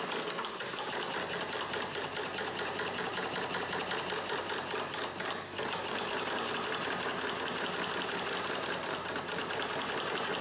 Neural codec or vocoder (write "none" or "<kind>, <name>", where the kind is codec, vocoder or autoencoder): none